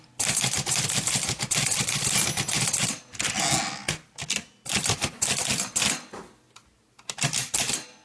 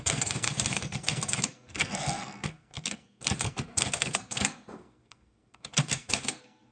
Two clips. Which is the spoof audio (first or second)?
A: second